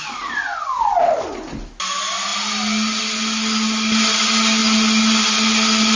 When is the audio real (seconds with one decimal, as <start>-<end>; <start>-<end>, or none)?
0.0-6.0